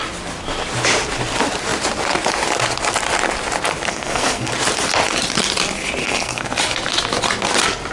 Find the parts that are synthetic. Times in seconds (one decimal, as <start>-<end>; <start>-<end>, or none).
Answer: 3.9-4.5; 6.0-6.5